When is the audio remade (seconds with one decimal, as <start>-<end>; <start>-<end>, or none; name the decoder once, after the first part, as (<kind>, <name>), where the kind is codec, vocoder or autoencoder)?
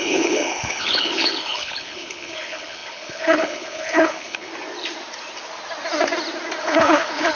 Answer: 0.0-4.5 (codec, HILCodec); 6.6-7.4